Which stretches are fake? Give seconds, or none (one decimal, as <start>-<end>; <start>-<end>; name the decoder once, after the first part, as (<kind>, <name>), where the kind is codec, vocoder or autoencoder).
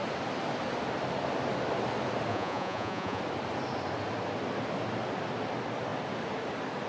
2.3-3.2 (vocoder, Vocos)